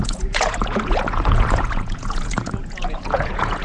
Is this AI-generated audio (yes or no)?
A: yes